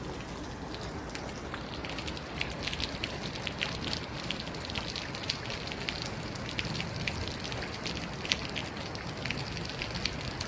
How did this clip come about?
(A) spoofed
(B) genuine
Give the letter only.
B